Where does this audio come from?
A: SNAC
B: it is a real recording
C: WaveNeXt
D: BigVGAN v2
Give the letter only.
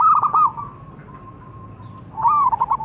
B